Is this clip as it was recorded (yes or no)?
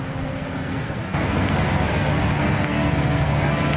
no